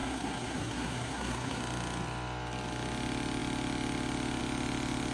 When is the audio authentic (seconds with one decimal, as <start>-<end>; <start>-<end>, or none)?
1.6-5.1